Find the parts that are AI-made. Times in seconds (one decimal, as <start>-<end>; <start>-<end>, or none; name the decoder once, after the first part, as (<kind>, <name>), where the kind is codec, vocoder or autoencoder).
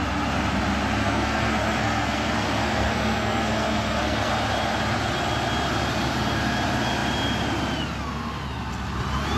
1.0-4.3 (codec, SNAC)